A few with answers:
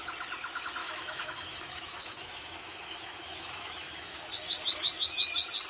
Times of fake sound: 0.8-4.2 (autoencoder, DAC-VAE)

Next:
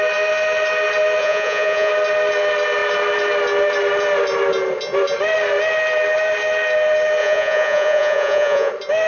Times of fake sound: 1.2-1.9 (vocoder, Vocos); 7.2-8.7